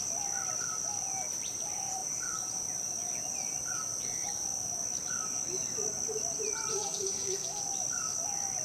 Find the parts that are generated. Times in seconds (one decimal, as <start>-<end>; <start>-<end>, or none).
6.7-7.6